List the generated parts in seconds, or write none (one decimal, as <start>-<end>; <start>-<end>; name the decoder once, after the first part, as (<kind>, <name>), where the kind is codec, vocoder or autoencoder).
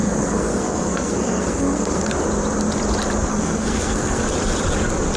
0.0-2.1 (codec, SNAC); 3.3-4.2